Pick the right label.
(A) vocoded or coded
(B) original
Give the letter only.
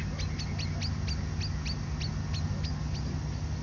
B